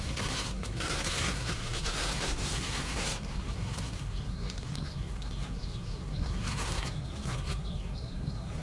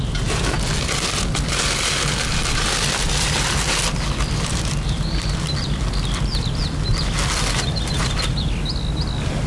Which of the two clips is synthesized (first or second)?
first